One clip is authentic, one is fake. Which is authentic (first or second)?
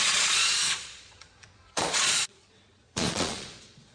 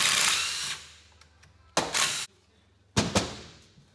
second